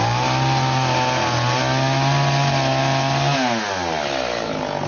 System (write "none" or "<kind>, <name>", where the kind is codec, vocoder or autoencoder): none